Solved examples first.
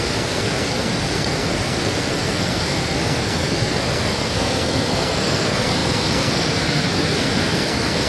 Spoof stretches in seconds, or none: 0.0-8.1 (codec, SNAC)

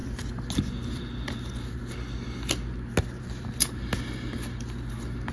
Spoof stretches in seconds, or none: none

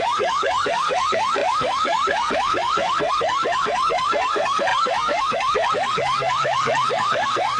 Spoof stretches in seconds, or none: 0.0-7.6 (codec, SNAC)